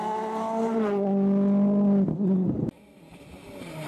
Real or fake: real